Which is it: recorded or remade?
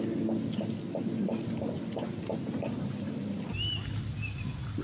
recorded